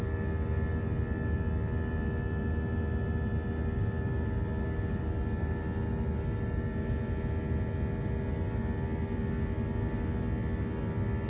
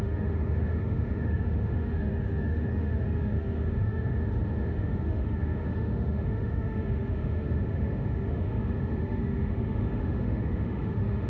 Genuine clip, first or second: first